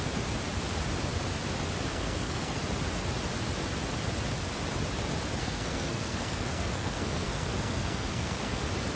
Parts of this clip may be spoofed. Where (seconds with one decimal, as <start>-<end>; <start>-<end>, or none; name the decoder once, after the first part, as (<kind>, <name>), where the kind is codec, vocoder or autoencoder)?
1.9-2.6 (codec, SNAC); 5.4-8.6